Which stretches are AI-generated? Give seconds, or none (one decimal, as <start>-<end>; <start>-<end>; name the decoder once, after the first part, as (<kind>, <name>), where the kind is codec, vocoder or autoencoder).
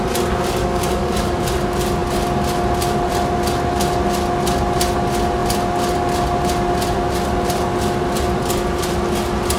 0.6-1.4 (codec, DAC)